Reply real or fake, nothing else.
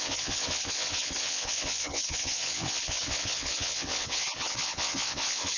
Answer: fake